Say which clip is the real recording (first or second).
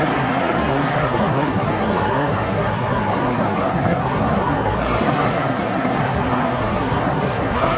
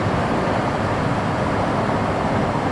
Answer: second